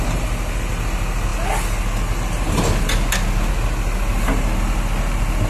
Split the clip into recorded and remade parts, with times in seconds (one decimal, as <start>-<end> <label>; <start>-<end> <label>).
0.0-5.5 recorded